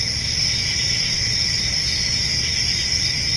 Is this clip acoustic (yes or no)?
yes